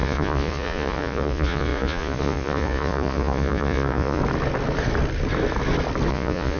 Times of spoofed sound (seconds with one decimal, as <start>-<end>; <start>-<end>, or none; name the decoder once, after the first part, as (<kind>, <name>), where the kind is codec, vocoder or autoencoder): 0.0-4.2 (vocoder, Vocos); 6.1-6.6